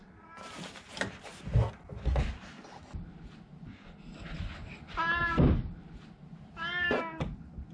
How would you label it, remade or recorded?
recorded